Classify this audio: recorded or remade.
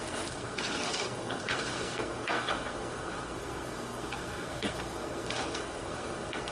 remade